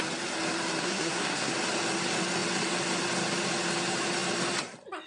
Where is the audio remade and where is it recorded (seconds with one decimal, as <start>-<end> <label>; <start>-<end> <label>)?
0.0-0.8 recorded; 0.8-1.5 remade; 1.5-5.1 recorded